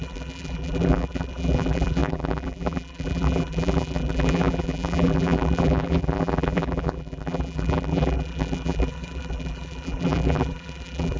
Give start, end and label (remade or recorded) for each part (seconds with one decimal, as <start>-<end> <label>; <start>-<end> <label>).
0.0-11.2 remade